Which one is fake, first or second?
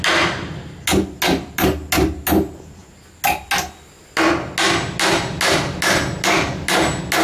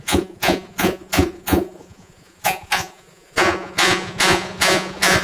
second